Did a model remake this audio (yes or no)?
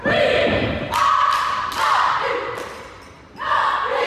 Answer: no